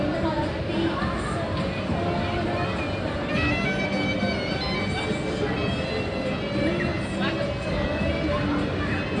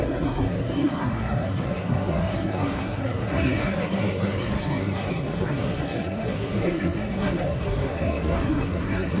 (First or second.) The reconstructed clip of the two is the second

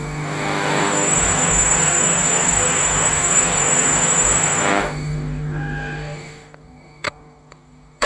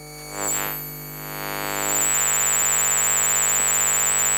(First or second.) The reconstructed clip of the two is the first